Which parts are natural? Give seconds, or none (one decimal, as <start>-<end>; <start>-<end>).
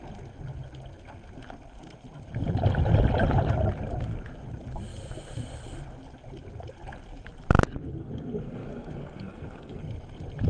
0.0-8.0; 9.8-10.5